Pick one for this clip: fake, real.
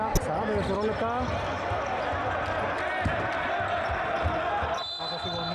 real